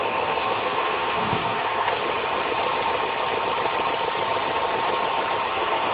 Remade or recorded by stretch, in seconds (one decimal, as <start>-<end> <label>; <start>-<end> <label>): 0.0-2.0 remade; 2.0-5.5 recorded; 5.5-5.9 remade